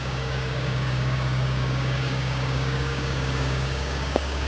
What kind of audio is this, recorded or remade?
remade